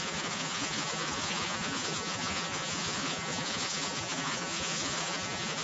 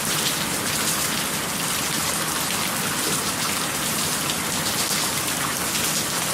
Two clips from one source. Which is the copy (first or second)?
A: first